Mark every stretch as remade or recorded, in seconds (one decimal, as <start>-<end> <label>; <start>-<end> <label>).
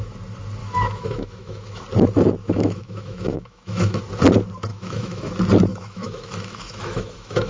0.0-0.6 recorded; 0.6-1.8 remade; 1.8-2.4 recorded; 2.4-4.0 remade; 4.0-4.7 recorded; 4.7-5.3 remade; 5.3-5.7 recorded; 5.7-7.5 remade